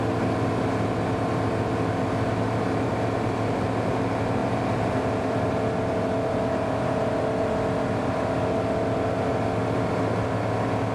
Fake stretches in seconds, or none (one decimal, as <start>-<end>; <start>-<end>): 4.4-5.5